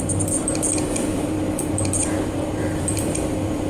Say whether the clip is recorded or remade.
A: remade